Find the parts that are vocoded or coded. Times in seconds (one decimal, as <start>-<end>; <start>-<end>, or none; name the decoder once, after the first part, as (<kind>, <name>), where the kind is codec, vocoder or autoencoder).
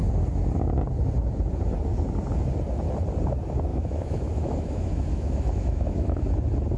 3.7-6.2 (autoencoder, DAC-VAE)